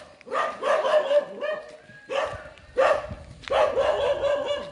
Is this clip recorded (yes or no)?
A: yes